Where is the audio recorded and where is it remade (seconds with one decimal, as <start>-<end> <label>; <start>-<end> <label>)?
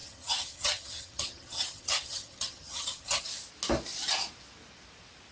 0.0-3.2 remade; 3.2-5.3 recorded